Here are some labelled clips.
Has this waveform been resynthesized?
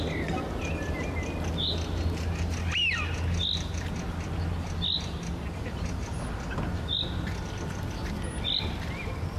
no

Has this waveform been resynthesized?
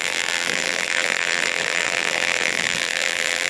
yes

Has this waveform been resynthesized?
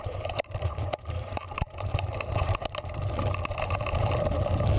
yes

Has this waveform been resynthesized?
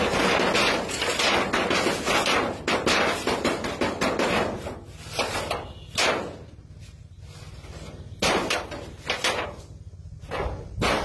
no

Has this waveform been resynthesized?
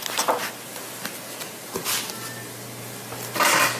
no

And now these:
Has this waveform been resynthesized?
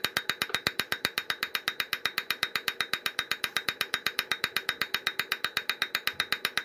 no